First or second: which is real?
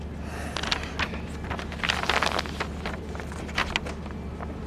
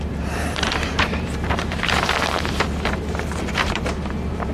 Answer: first